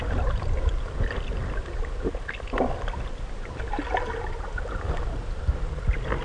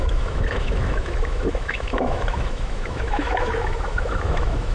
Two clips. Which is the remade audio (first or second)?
second